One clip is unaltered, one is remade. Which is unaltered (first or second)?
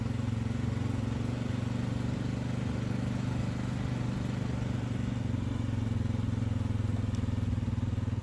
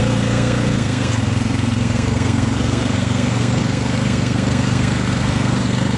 first